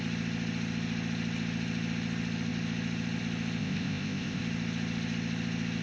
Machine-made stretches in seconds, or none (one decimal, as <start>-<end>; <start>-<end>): 3.6-4.4